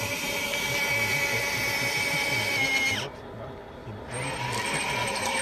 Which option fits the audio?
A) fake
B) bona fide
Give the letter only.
B